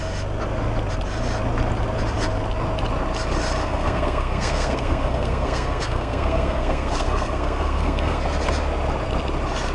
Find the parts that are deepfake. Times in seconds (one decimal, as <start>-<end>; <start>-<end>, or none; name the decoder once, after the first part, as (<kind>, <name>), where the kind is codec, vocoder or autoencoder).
3.6-8.2 (codec, SNAC)